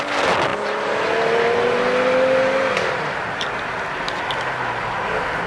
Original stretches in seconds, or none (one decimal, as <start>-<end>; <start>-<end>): 0.0-5.5